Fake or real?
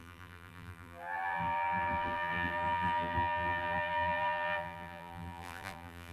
fake